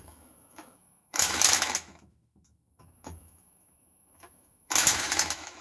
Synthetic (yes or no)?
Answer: yes